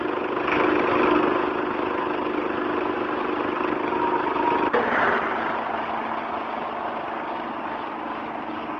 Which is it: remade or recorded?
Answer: recorded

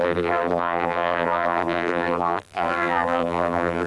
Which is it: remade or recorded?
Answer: remade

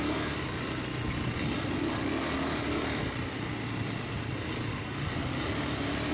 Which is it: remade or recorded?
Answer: recorded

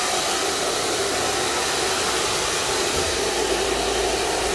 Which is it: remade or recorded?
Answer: recorded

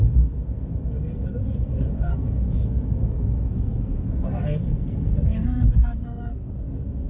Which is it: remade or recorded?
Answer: remade